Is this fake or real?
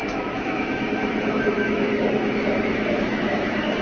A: fake